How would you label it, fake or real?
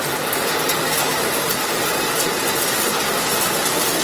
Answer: real